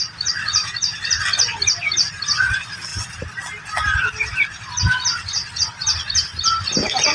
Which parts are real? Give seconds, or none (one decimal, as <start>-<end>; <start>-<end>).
0.0-7.1